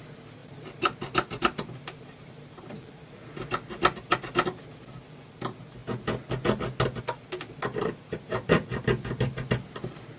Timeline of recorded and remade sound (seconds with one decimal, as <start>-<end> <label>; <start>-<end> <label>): 0.0-0.4 recorded; 0.4-3.5 remade; 3.5-7.7 recorded; 7.7-9.5 remade; 9.5-10.2 recorded